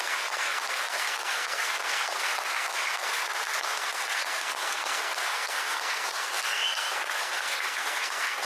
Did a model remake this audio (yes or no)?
yes